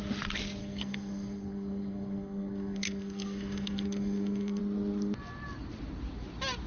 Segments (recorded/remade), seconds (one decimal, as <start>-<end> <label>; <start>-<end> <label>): 0.0-0.6 recorded; 0.6-4.6 remade; 4.6-6.7 recorded